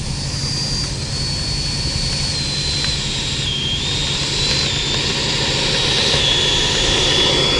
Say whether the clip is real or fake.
real